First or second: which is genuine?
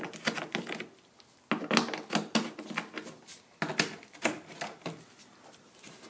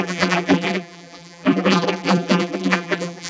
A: first